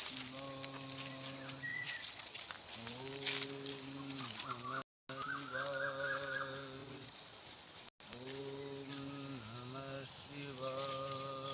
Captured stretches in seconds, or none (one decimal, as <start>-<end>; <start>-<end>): 0.0-1.7; 2.4-6.8; 7.4-11.5